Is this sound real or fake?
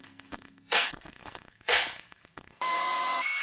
fake